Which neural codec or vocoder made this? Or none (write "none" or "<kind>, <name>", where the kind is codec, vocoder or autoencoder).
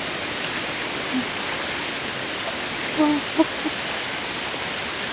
none